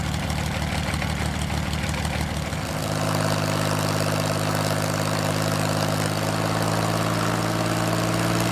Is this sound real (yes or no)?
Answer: yes